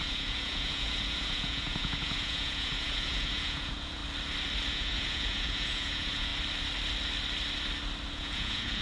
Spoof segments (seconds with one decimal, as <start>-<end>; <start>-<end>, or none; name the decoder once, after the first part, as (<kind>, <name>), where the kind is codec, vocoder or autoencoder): 0.0-4.0 (vocoder, Vocos); 4.7-6.3; 8.1-8.8